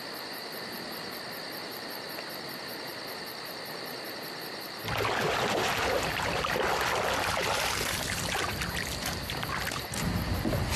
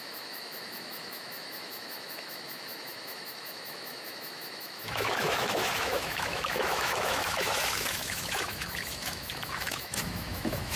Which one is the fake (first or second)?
second